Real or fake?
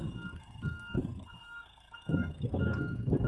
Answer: fake